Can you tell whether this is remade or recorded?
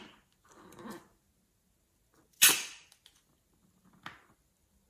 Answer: recorded